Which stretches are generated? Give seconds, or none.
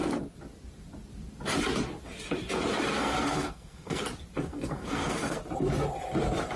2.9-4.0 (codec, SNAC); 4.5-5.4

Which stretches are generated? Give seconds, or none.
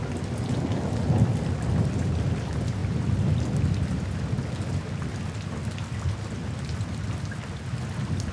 none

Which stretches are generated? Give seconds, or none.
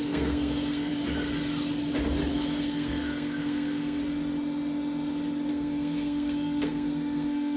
0.0-0.9 (codec, SNAC); 2.3-4.0; 5.5-7.6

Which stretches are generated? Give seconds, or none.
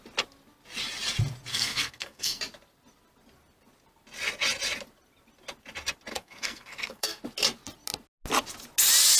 1.5-2.4 (codec, SNAC); 6.1-7.2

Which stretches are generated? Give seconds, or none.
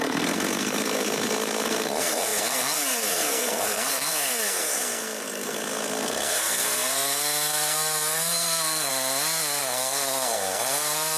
0.0-8.9 (codec, SNAC); 9.6-11.2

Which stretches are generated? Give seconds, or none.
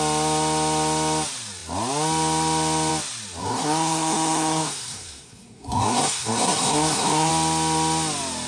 3.4-7.3 (codec, SNAC)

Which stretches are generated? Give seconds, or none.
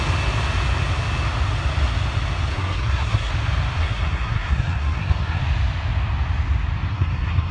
2.5-3.3 (codec, SNAC); 3.8-5.4; 6.9-7.5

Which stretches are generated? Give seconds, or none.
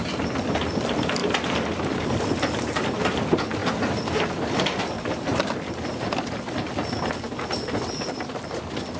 none